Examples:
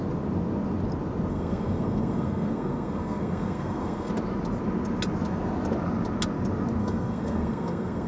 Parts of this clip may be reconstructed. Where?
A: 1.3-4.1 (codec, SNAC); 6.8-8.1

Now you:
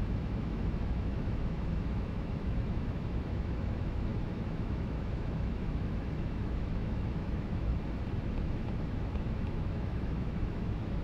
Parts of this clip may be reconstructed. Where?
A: 0.0-7.7 (autoencoder, DAC-VAE); 8.4-11.0

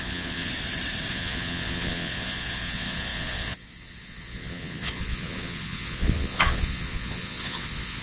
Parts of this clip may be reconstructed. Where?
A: 0.0-0.5 (vocoder, Vocos); 1.1-8.0